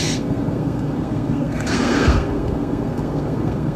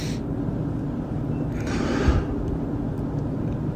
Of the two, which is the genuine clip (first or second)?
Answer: second